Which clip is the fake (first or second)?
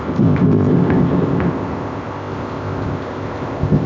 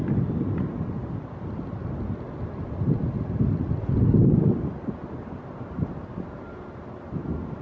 first